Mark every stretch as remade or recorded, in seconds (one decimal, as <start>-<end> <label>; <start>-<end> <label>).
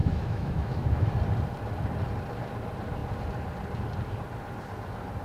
0.0-1.1 remade; 1.1-5.2 recorded